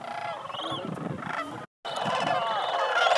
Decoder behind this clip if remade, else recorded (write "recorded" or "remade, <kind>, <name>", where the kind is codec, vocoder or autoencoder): recorded